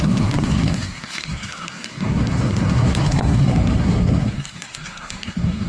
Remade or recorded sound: remade